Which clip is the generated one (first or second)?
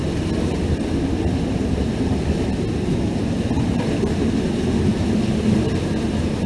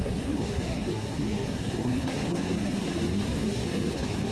second